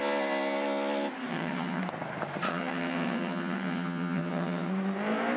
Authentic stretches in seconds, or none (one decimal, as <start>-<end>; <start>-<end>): 0.0-1.3; 1.8-2.5; 4.7-5.4